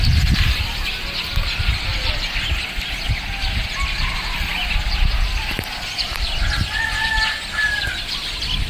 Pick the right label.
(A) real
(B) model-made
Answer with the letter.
A